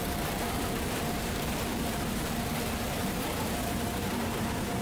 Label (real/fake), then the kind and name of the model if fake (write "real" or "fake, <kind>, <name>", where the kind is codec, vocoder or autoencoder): fake, vocoder, BigVGAN v2